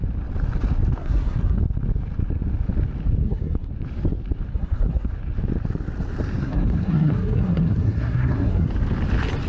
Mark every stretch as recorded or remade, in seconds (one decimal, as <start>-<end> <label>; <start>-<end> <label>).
0.0-1.0 recorded; 1.0-1.6 remade; 1.6-3.2 recorded; 3.2-3.7 remade; 3.7-4.5 recorded; 4.5-5.1 remade; 5.1-6.4 recorded; 6.4-8.7 remade; 8.7-9.5 recorded